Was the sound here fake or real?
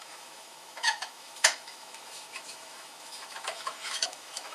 fake